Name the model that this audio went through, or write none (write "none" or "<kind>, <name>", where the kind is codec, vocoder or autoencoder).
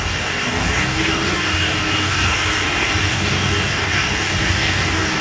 codec, DAC